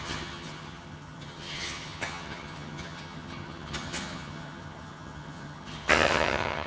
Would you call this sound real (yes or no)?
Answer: no